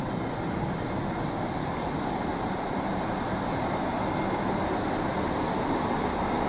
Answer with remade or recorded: recorded